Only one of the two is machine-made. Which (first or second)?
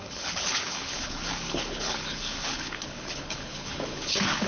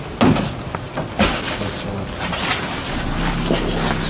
first